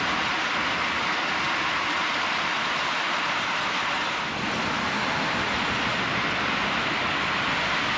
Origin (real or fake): real